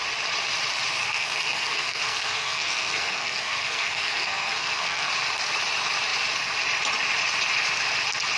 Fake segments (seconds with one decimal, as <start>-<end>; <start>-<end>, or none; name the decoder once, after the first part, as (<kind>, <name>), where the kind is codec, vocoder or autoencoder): 1.0-5.1 (codec, SNAC)